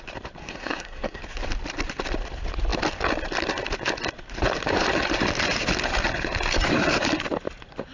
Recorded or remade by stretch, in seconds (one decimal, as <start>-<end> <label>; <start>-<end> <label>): 0.0-0.4 recorded; 0.4-1.2 remade; 1.2-7.9 recorded